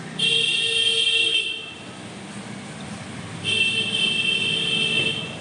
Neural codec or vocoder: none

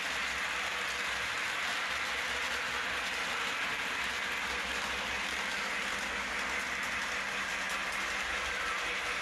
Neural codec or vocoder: none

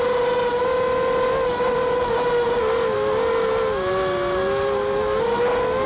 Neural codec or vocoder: none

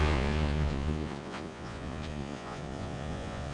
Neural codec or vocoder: vocoder, Vocos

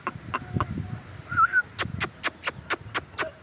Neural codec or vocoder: none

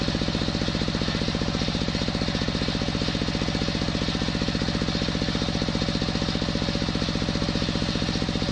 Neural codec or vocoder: none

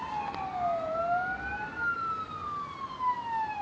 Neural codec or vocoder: none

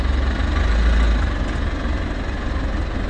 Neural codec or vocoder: none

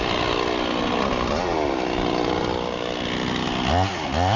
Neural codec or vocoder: none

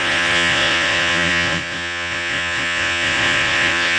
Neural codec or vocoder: vocoder, Vocos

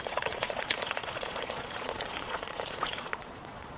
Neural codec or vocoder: vocoder, Vocos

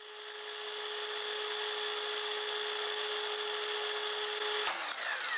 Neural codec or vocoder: none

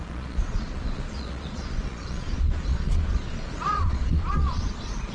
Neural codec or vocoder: vocoder, Vocos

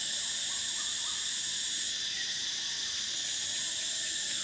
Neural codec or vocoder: none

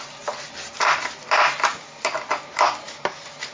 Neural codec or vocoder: none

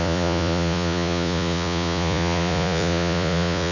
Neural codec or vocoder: vocoder, Vocos